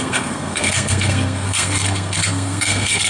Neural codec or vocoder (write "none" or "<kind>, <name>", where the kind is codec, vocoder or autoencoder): codec, SNAC